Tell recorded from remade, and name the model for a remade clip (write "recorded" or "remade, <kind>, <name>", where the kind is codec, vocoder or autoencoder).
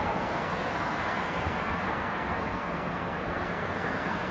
remade, codec, SNAC